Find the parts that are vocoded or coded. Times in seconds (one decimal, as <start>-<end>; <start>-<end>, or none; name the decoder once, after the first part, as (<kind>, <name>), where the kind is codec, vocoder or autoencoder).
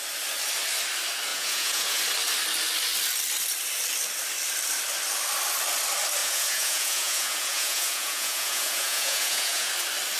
1.3-2.0 (vocoder, Vocos); 6.2-9.7